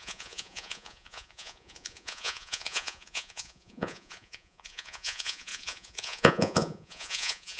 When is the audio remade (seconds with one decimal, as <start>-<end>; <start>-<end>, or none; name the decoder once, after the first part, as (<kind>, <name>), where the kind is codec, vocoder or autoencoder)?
0.0-7.6 (vocoder, Vocos)